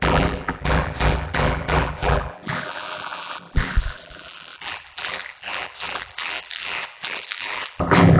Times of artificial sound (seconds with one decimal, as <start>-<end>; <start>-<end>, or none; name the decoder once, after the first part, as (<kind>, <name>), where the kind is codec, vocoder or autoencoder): 0.0-8.2 (vocoder, BigVGAN v2)